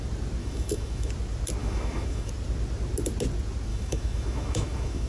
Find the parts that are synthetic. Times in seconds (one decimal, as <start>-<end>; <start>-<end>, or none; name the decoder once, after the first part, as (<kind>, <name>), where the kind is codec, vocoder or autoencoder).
0.4-1.1 (autoencoder, DAC-VAE); 1.6-2.3; 3.7-5.1